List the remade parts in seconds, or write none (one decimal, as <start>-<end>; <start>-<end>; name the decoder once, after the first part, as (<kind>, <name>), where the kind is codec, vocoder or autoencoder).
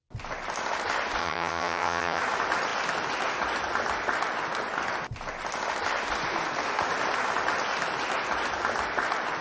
1.2-2.2 (vocoder, HiFi-GAN)